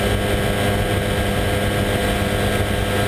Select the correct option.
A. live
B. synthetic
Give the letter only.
A